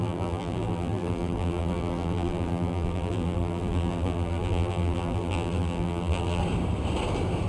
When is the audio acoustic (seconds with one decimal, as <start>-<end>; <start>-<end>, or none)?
6.4-7.5